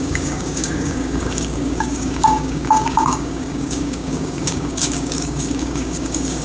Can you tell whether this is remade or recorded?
remade